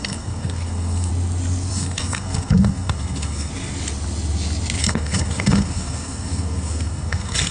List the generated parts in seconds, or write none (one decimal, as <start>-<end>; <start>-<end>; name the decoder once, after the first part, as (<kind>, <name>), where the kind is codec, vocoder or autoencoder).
0.0-1.1 (codec, SNAC); 1.7-3.5; 4.8-7.5